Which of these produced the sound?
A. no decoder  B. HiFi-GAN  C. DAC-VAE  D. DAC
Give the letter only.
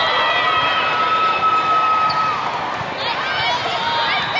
A